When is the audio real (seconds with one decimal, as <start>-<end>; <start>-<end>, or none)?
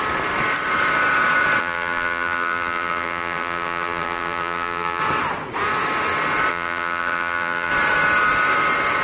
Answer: 0.0-1.6; 5.0-6.5; 7.7-9.0